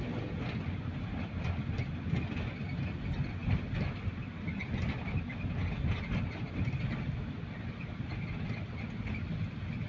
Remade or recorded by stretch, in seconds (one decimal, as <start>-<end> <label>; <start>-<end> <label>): 0.0-9.9 recorded